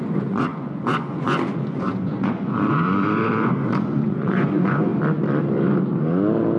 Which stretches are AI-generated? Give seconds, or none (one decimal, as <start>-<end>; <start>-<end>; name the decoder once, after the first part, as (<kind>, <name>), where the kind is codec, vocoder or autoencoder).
0.0-4.9 (vocoder, Vocos)